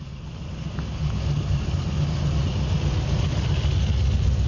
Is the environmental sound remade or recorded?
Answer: recorded